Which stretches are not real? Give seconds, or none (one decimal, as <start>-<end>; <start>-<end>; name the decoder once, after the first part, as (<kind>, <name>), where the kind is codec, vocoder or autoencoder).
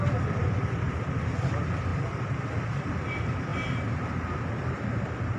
none